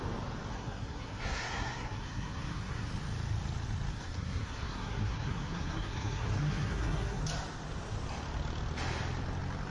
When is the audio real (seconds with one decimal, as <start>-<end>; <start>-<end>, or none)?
0.0-0.5; 2.9-3.9; 7.2-9.7